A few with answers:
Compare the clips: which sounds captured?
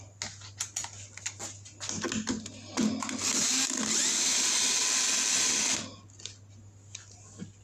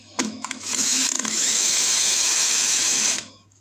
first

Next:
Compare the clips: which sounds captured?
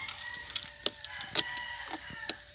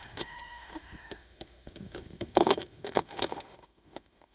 first